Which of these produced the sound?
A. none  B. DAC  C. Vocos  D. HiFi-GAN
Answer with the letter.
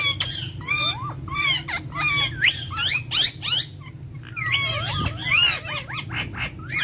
A